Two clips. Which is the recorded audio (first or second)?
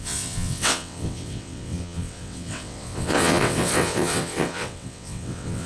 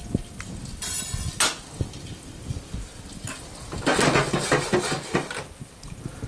second